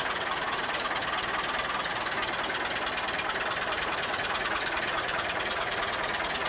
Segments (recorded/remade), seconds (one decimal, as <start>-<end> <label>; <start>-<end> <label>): 0.0-1.0 remade; 1.0-3.8 recorded; 3.8-6.5 remade